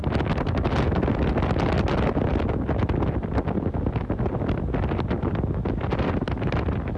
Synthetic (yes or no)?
no